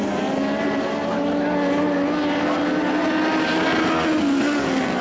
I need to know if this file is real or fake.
real